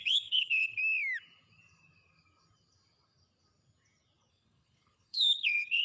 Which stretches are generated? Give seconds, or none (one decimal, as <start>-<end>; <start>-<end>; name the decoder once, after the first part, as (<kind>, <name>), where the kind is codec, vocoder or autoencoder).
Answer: 0.0-0.8 (codec, HILCodec); 4.3-5.8